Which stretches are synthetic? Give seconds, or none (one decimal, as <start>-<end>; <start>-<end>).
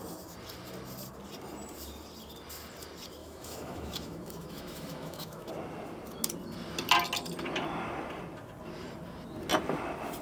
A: 3.2-5.5